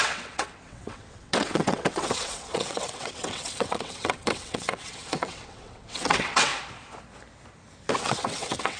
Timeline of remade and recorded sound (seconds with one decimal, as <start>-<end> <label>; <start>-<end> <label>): 0.0-6.5 remade; 6.5-8.0 recorded; 8.0-8.8 remade